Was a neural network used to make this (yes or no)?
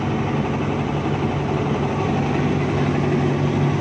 no